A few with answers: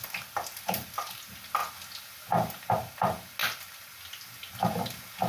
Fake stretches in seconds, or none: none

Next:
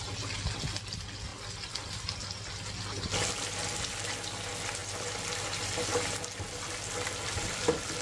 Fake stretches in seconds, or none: none

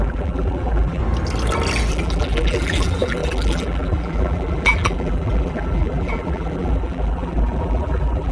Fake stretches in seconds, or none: 0.0-1.0 (vocoder, BigVGAN v2); 1.9-8.3

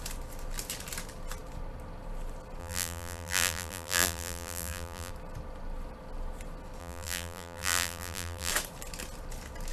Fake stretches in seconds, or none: 2.6-5.1 (vocoder, BigVGAN v2); 6.8-8.5